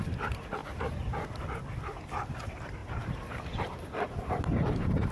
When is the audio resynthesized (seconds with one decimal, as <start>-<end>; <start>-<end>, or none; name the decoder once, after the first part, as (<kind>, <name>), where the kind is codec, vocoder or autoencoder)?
2.8-5.1 (vocoder, BigVGAN v2)